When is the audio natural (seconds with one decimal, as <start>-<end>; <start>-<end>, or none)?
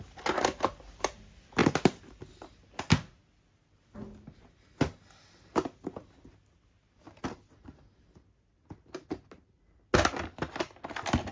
0.0-11.3